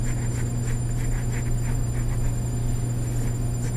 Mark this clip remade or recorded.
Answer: remade